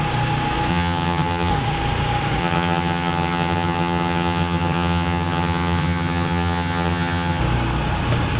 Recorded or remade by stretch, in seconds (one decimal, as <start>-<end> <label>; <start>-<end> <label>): 0.0-0.7 recorded; 0.7-1.5 remade; 1.5-2.4 recorded; 2.4-7.4 remade; 7.4-8.4 recorded